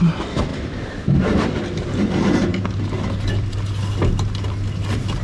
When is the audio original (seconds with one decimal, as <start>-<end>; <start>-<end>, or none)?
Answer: 0.0-0.5; 1.6-5.2